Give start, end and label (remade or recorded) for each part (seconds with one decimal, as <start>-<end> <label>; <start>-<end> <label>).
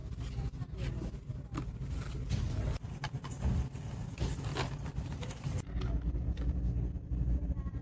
0.0-0.9 remade; 0.9-4.5 recorded; 4.5-5.1 remade; 5.1-7.1 recorded; 7.1-7.8 remade